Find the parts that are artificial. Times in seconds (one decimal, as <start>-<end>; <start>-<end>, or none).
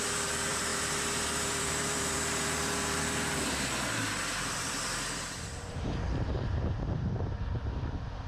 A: 0.0-8.3